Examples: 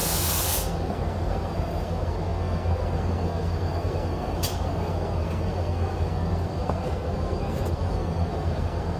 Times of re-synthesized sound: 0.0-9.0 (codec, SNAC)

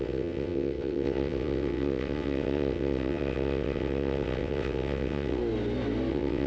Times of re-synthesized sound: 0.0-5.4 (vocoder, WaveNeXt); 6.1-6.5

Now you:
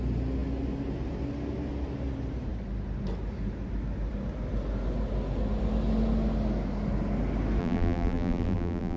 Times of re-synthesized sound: 7.6-9.0 (vocoder, BigVGAN v2)

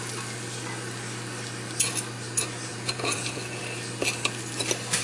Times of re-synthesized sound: 2.7-3.6 (vocoder, Vocos)

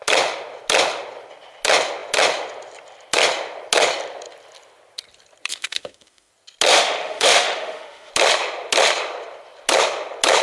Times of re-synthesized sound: 5.5-6.3 (autoencoder, DAC-VAE); 6.7-8.1

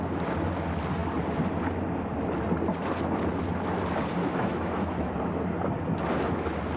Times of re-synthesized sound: 4.2-5.1 (autoencoder, DAC-VAE)